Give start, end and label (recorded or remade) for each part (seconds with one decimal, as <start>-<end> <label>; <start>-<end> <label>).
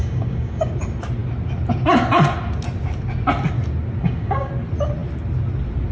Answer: 0.0-0.7 remade; 0.7-4.0 recorded; 4.0-4.5 remade; 4.5-5.9 recorded